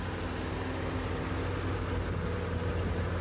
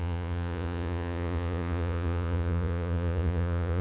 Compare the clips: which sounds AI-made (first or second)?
second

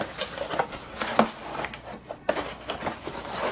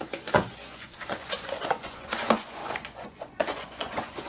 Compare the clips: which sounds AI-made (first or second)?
second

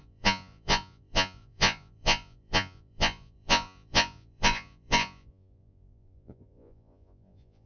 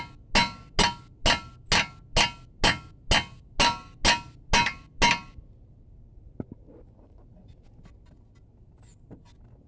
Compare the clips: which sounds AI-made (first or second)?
first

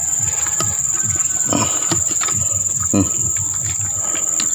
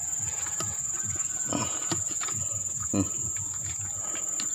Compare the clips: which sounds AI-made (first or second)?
second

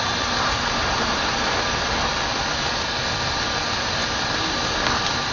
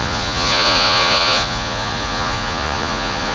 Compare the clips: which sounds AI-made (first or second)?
second